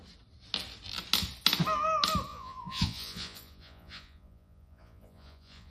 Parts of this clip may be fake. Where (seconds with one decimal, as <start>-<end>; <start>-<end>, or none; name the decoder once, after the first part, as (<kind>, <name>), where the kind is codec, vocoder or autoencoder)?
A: 2.3-5.7 (vocoder, Vocos)